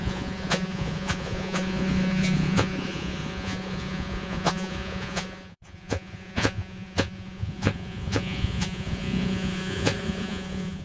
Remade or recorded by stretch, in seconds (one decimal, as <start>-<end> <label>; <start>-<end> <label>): 0.0-10.8 remade